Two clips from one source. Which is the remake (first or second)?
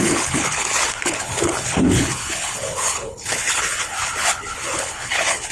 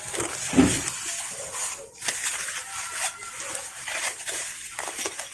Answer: first